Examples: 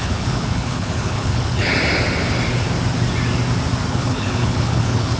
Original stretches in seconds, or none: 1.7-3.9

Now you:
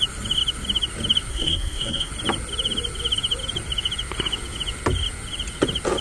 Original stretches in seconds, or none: 0.0-1.3; 2.1-6.0